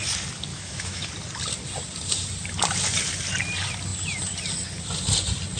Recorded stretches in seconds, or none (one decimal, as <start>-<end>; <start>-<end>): 0.0-0.5; 1.1-5.6